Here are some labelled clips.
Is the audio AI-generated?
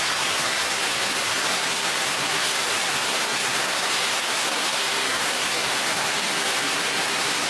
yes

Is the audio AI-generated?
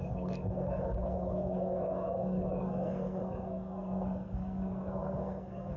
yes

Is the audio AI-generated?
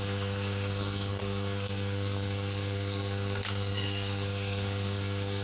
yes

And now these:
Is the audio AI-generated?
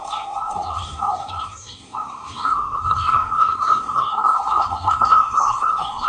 yes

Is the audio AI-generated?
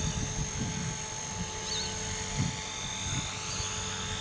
no